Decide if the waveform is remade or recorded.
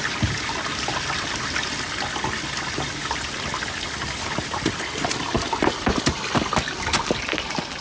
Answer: recorded